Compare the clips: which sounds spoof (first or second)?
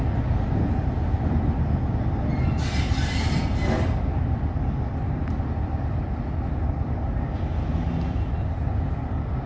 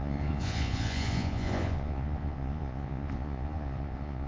second